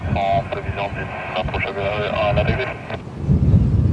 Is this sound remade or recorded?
recorded